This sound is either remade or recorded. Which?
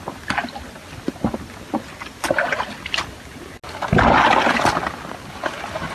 recorded